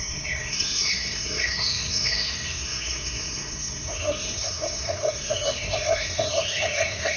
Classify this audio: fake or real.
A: fake